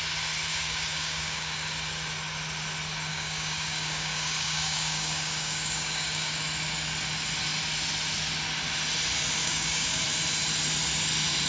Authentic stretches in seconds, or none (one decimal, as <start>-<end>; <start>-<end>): 0.0-0.5; 1.6-3.1; 6.4-9.4; 10.0-11.5